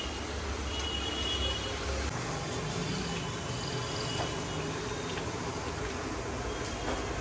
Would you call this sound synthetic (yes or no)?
no